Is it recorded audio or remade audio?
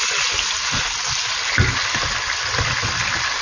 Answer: recorded